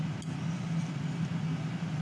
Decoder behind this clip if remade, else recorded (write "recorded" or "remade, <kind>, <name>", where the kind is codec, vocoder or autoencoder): recorded